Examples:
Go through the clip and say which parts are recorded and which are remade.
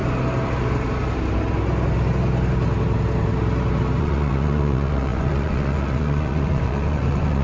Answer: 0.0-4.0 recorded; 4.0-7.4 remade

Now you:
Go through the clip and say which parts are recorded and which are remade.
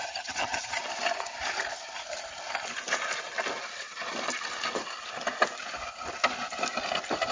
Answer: 0.0-0.8 remade; 0.8-7.3 recorded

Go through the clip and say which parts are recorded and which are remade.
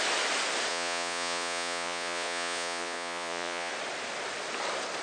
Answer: 0.0-0.7 recorded; 0.7-3.7 remade; 3.7-5.0 recorded